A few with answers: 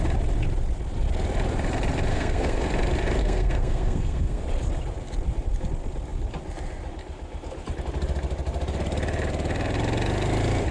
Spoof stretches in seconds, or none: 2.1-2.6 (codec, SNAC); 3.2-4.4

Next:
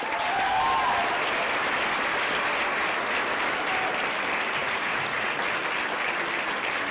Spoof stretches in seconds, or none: 4.6-5.3 (vocoder, Vocos)

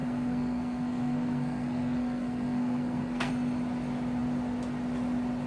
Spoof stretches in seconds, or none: 0.0-3.3 (codec, SNAC)